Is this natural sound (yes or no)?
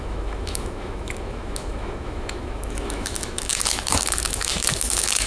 no